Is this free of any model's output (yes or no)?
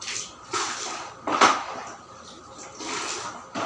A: yes